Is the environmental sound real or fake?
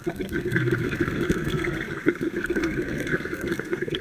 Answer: fake